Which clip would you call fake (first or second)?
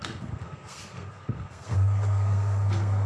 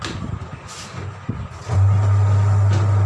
first